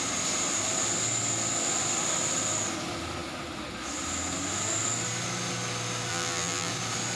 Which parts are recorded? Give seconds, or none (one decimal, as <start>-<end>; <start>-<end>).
0.0-6.1; 6.7-7.2